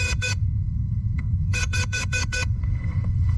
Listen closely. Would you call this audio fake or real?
fake